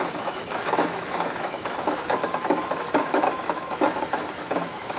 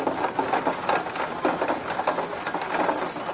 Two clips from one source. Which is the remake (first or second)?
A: first